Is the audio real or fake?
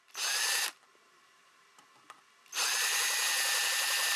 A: real